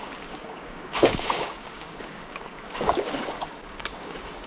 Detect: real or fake fake